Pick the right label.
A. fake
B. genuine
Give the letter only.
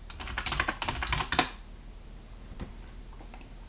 B